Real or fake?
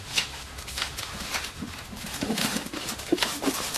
fake